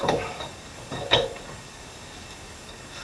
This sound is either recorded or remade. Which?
remade